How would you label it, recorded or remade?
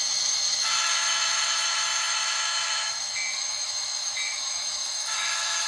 remade